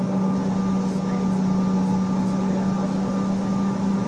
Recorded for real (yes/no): yes